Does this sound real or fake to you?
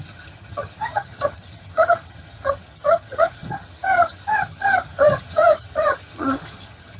fake